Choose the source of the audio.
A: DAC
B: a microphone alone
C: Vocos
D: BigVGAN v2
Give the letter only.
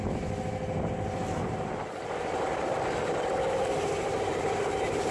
B